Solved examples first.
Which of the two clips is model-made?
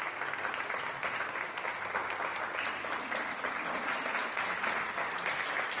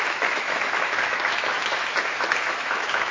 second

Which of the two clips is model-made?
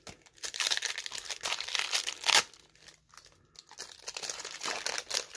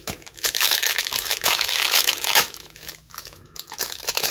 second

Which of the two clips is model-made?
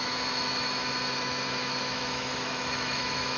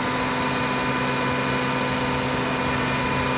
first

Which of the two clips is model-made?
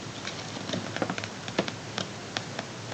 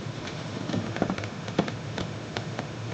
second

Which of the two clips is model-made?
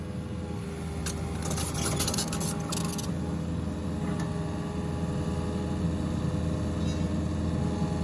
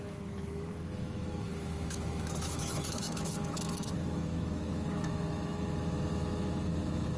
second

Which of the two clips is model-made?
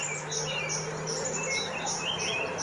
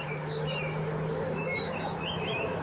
second